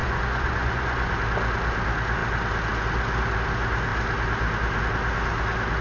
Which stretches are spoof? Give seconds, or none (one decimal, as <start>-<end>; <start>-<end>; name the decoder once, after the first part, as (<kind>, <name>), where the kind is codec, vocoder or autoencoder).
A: 0.0-1.1 (vocoder, Vocos)